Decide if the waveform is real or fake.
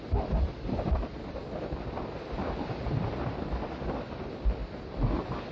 real